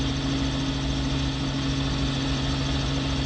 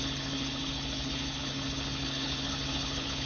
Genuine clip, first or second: first